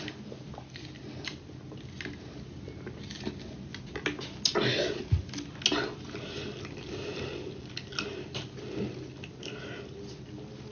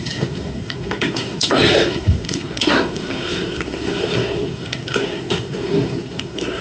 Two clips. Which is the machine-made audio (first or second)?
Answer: second